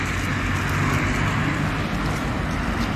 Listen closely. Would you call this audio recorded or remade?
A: recorded